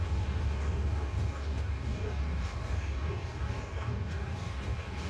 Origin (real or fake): fake